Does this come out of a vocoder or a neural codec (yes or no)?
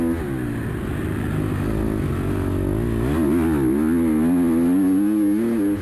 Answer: no